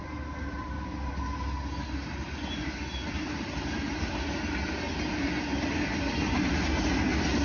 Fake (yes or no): no